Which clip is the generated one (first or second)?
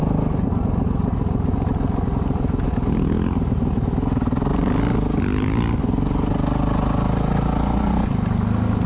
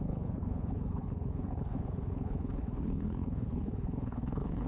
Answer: second